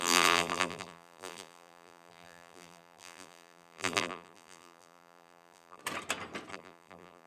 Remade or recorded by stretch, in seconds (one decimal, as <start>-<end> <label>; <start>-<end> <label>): 0.0-5.8 remade; 5.8-6.5 recorded; 6.5-7.3 remade